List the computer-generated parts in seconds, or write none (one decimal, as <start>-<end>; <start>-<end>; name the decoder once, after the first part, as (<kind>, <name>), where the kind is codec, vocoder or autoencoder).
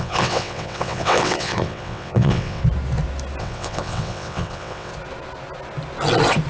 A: 0.0-2.6 (vocoder, WaveNeXt); 3.4-4.9